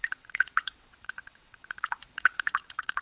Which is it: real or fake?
fake